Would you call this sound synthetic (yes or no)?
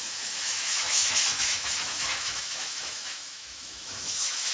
yes